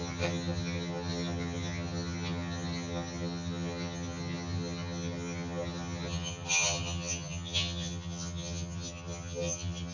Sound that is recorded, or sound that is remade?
remade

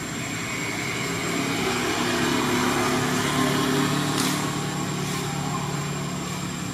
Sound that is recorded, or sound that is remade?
recorded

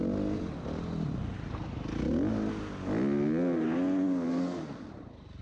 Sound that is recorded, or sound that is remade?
recorded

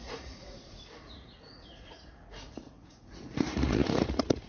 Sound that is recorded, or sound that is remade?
remade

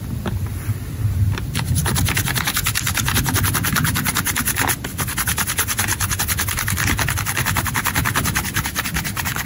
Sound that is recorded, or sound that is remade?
recorded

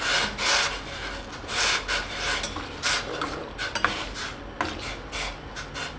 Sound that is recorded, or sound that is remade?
recorded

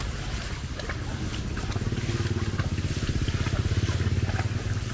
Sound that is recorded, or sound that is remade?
recorded